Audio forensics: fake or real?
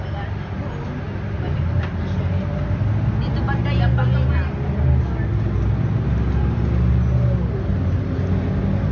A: real